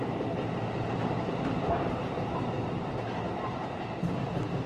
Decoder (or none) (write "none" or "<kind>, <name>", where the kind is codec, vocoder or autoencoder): none